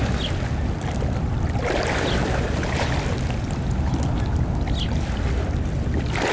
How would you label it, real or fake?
real